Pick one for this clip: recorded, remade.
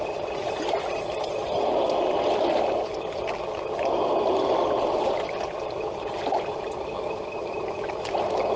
recorded